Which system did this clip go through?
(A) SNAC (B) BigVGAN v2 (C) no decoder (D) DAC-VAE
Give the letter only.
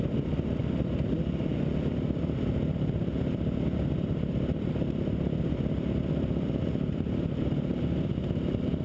B